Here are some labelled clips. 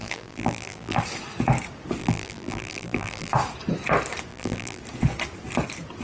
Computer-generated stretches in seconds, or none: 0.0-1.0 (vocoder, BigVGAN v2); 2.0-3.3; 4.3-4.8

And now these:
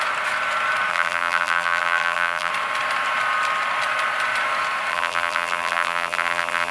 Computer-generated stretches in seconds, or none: 0.9-2.5 (vocoder, BigVGAN v2); 4.9-6.7